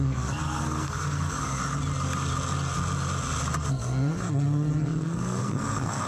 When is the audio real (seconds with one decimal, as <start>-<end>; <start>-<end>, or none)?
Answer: 1.6-3.7